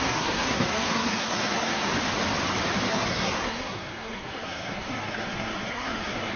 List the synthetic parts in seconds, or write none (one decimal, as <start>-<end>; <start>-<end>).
0.0-1.9; 2.9-6.4